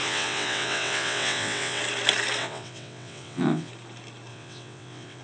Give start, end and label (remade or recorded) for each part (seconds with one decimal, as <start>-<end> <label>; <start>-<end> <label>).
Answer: 0.0-1.8 remade; 1.8-2.4 recorded; 2.4-3.7 remade; 3.7-4.3 recorded; 4.3-5.2 remade